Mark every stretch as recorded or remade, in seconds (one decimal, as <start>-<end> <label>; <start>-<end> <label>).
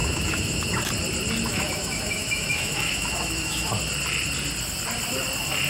0.0-0.8 remade; 0.8-1.5 recorded; 1.5-3.7 remade; 3.7-5.7 recorded